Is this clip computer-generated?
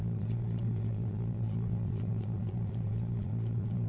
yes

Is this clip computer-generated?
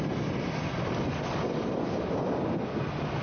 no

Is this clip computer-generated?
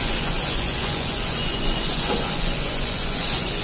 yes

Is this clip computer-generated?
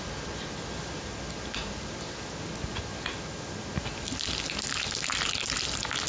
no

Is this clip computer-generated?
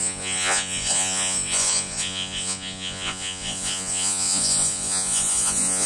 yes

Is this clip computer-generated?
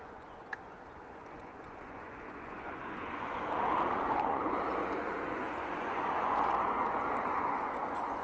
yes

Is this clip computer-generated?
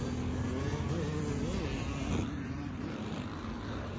no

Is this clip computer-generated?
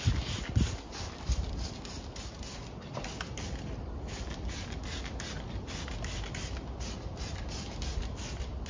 no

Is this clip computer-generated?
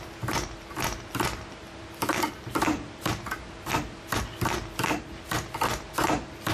no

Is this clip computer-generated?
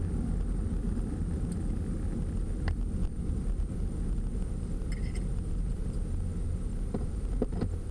no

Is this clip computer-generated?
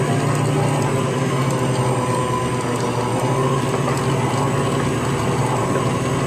no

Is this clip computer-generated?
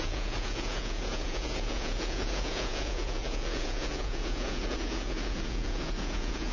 yes